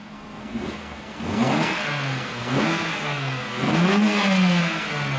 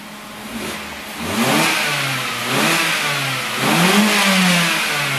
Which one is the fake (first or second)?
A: first